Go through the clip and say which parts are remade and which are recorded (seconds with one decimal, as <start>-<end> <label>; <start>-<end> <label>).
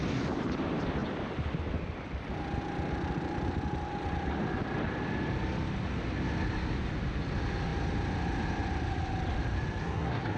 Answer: 0.0-9.8 recorded; 9.8-10.4 remade